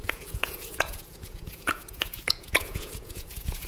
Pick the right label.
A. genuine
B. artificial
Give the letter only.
B